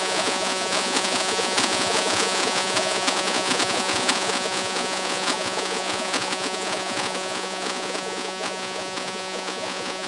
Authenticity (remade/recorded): remade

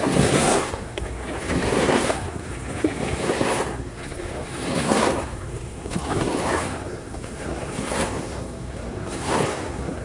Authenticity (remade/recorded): remade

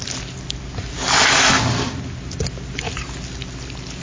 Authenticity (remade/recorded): recorded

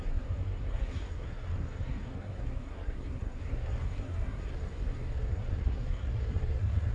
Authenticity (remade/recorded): remade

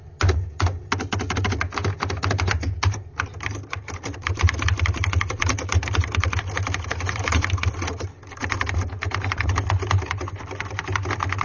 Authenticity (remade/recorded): recorded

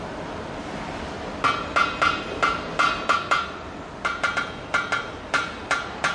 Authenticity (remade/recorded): recorded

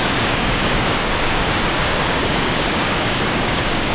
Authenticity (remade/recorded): remade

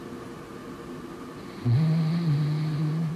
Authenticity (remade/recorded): recorded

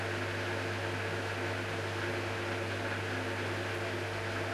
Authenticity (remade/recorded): recorded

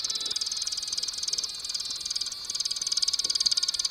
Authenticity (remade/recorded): recorded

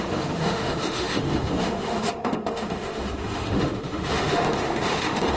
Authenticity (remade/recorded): remade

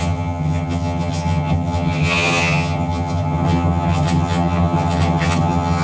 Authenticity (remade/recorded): remade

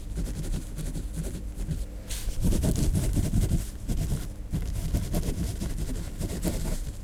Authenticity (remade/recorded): recorded